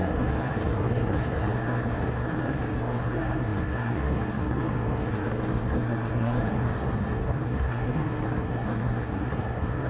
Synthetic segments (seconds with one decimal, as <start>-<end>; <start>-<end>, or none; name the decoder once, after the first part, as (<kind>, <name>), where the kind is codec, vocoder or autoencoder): 0.0-9.9 (codec, SNAC)